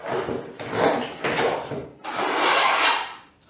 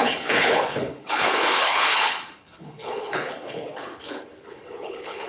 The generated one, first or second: second